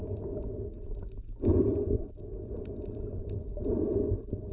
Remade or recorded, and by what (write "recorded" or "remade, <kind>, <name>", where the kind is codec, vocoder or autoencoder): recorded